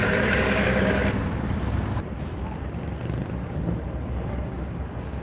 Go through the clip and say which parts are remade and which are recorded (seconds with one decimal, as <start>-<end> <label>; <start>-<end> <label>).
0.0-1.0 remade; 1.0-4.1 recorded; 4.1-5.2 remade